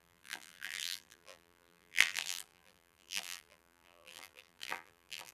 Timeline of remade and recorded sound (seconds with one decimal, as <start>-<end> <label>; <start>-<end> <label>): 0.0-5.3 remade